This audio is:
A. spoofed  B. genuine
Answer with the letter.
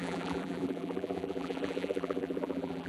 A